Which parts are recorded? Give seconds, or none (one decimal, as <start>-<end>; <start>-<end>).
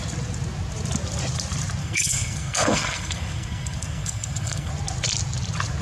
0.0-1.8; 4.7-5.8